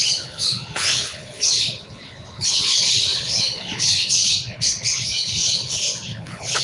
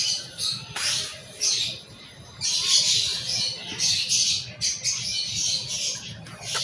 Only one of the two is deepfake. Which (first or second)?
first